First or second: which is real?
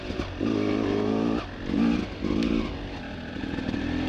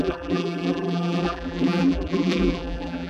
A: first